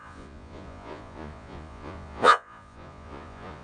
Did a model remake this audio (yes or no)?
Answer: yes